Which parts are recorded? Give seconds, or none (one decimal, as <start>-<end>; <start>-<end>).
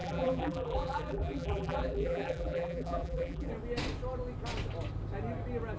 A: 3.5-5.8